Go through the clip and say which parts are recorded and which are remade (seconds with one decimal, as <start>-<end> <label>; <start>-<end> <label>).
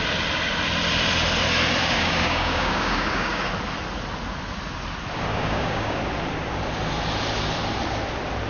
0.0-1.8 recorded; 1.8-3.5 remade; 3.5-5.3 recorded; 5.3-6.0 remade; 6.0-8.5 recorded